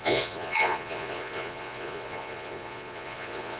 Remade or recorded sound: remade